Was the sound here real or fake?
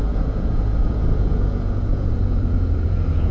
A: fake